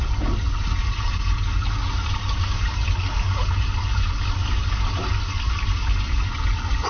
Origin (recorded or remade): recorded